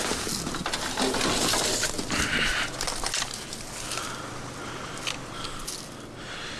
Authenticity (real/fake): real